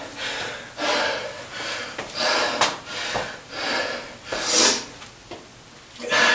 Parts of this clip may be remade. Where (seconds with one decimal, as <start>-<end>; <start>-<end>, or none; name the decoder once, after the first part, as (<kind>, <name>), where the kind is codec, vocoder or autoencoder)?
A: none

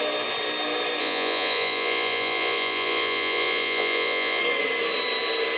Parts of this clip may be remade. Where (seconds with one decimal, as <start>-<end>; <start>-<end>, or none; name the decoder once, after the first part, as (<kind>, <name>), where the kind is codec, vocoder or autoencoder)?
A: 1.0-4.4 (vocoder, Vocos)